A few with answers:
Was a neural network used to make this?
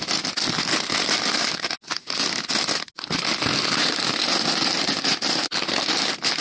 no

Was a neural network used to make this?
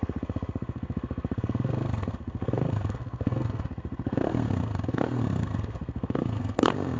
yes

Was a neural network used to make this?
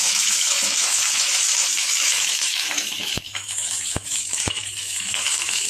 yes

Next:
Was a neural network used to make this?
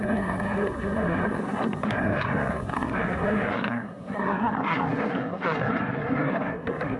yes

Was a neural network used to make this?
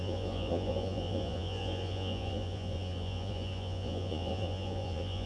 yes